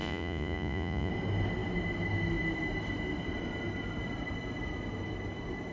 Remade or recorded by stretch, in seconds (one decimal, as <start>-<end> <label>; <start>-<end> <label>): 0.0-1.1 remade; 1.1-5.7 recorded